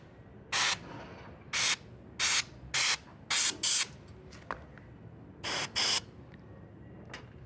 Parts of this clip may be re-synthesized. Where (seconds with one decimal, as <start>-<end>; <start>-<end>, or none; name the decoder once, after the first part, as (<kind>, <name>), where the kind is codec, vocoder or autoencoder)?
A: none